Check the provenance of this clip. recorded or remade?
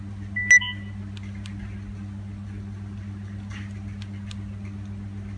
recorded